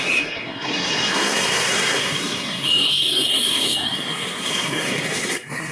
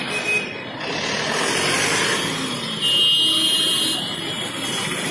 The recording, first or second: second